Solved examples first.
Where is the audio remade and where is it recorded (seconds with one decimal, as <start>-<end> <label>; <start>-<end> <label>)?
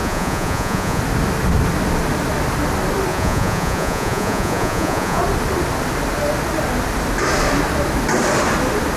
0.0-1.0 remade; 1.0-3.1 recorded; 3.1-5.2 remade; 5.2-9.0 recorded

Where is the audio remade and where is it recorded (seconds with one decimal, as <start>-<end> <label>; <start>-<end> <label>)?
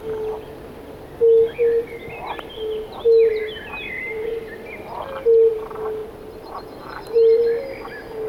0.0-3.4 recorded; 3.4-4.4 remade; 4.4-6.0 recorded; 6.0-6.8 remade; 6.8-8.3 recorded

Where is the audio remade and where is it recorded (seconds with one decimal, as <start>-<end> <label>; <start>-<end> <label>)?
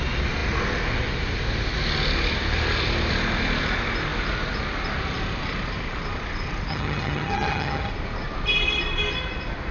0.0-6.7 recorded; 6.7-7.9 remade; 7.9-9.7 recorded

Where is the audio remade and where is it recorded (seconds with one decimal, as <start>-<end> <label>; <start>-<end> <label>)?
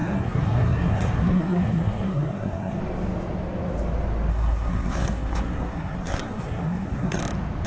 0.0-2.8 remade; 2.8-4.3 recorded; 4.3-7.2 remade; 7.2-7.7 recorded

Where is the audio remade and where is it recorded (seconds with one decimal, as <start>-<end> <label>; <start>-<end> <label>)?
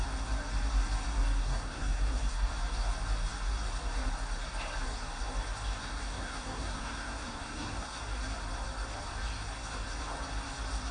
0.0-1.4 recorded; 1.4-2.5 remade; 2.5-5.8 recorded; 5.8-8.0 remade; 8.0-10.9 recorded